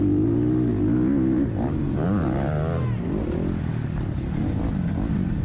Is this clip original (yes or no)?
yes